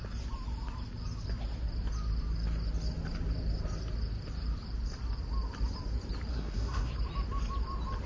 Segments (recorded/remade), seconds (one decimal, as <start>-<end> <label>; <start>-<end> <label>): 0.0-6.3 recorded; 6.3-6.9 remade; 6.9-8.1 recorded